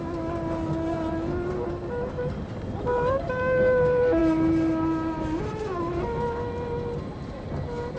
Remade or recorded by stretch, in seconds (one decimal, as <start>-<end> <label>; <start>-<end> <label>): 0.0-8.0 recorded